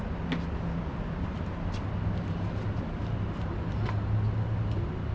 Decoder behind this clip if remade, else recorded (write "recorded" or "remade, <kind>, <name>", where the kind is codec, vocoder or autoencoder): recorded